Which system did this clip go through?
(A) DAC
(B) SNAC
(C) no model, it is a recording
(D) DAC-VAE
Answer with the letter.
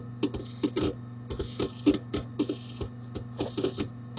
C